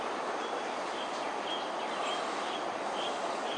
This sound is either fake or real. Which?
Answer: real